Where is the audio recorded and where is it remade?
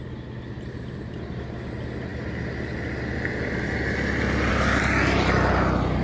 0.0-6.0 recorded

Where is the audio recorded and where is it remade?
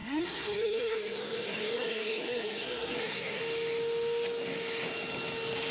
0.0-3.4 remade; 3.4-5.7 recorded